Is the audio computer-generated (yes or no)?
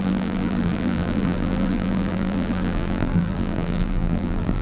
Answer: yes